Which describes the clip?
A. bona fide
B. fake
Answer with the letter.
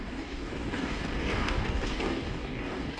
B